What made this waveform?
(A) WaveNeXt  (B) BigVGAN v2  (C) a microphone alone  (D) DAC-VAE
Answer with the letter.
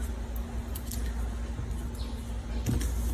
C